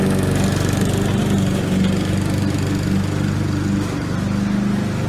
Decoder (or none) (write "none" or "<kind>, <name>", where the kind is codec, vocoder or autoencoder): none